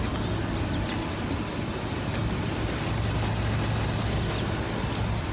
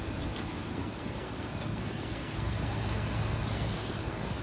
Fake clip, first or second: second